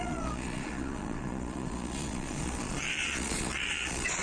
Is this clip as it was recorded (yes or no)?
no